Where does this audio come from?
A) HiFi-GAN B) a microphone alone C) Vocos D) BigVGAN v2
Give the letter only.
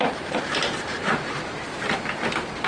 D